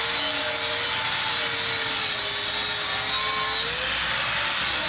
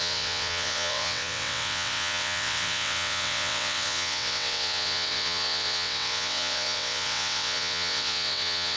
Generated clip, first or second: second